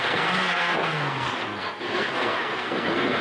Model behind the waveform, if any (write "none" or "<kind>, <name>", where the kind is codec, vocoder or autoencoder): codec, SNAC